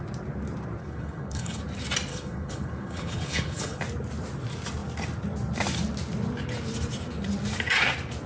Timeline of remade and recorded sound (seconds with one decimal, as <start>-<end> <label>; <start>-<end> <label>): 0.0-0.8 recorded; 0.8-1.6 remade; 1.6-2.1 recorded; 2.1-3.8 remade; 3.8-8.3 recorded